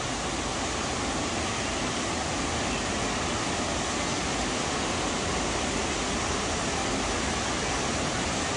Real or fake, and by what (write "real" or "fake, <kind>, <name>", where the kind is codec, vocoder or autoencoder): real